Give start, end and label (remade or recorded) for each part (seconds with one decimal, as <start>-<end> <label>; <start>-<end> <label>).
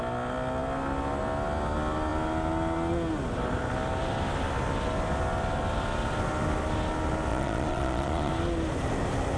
0.0-7.3 recorded; 7.3-8.3 remade; 8.3-9.4 recorded